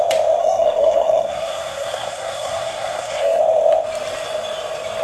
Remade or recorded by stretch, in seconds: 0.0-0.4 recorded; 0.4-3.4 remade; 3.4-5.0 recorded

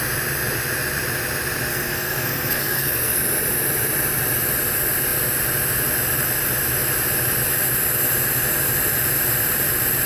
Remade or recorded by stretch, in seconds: 0.0-1.7 recorded; 1.7-3.2 remade; 3.2-10.1 recorded